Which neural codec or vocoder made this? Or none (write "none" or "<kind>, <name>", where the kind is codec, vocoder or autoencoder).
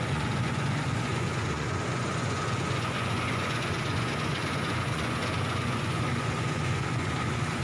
vocoder, Vocos